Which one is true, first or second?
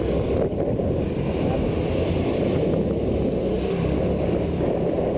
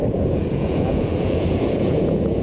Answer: first